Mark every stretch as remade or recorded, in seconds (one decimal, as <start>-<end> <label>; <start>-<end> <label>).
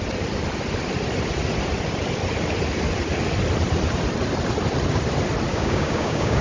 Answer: 0.0-5.5 recorded; 5.5-6.4 remade